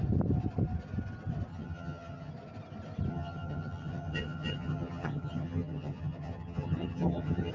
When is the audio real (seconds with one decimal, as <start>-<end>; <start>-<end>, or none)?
0.0-1.5; 2.3-3.1